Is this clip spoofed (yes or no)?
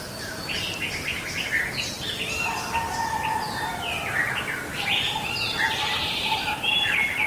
no